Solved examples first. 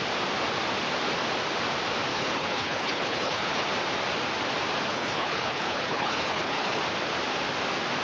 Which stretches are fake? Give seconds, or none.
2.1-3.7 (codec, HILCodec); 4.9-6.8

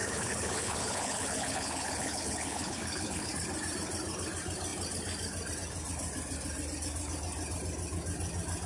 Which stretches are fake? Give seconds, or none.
0.0-3.3 (codec, HILCodec)

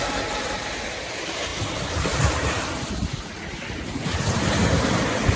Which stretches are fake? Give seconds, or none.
none

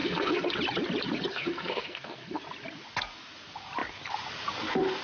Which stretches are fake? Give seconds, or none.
0.0-0.5 (codec, SNAC); 1.3-2.4

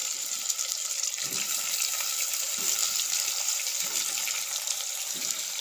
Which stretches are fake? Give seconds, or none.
0.0-5.6 (vocoder, BigVGAN v2)